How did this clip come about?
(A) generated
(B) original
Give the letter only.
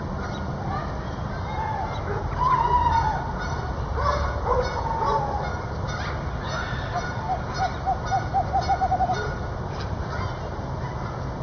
B